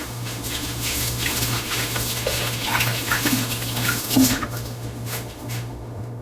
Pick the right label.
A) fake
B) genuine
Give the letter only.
A